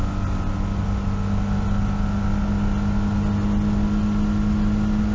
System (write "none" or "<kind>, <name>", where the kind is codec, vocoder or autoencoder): none